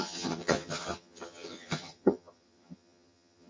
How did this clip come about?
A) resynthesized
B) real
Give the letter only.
A